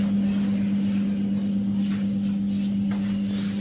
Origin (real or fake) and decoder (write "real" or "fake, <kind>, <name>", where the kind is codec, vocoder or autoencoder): real